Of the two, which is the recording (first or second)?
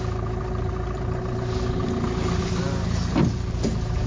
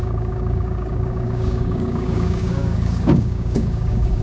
first